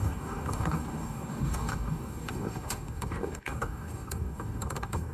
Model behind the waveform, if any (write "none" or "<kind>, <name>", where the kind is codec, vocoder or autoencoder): codec, DAC